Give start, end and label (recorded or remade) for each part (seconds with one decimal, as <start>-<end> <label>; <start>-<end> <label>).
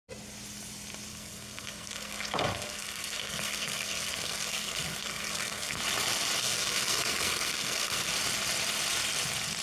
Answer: 0.0-1.1 recorded; 1.1-5.8 remade; 5.8-6.4 recorded; 6.4-8.1 remade; 8.1-9.6 recorded